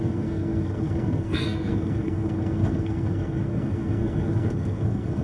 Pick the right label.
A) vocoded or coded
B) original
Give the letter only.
A